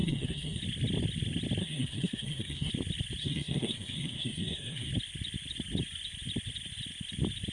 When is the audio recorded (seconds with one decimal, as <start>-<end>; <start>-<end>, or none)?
0.6-1.6; 2.7-3.2; 4.9-7.5